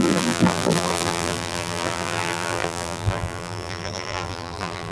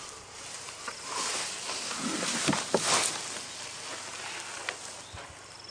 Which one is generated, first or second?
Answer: first